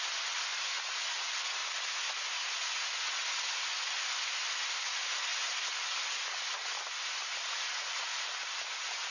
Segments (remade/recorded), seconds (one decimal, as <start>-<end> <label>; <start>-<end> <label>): 0.0-1.6 recorded; 1.6-4.8 remade; 4.8-7.2 recorded; 7.2-8.6 remade; 8.6-9.1 recorded